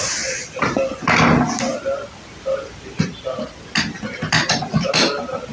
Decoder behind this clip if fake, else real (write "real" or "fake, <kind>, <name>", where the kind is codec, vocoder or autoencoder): real